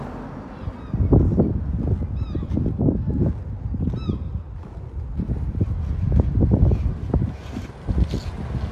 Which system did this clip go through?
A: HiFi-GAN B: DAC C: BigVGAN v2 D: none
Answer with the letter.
D